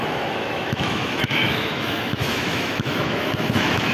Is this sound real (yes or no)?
no